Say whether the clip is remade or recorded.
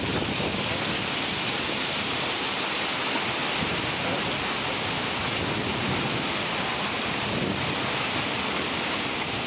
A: recorded